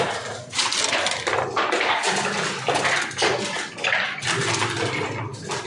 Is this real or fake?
real